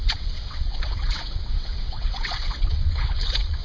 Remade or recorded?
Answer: remade